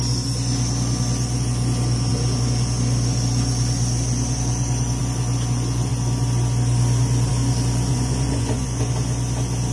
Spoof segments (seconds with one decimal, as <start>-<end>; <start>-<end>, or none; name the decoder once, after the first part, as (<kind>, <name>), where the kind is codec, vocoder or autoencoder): 7.9-8.9 (vocoder, Vocos)